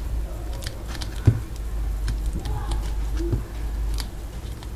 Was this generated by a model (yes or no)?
no